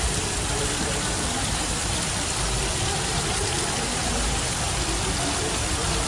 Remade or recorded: remade